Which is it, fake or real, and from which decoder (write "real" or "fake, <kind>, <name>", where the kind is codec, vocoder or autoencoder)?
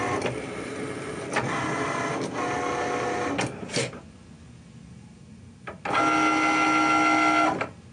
real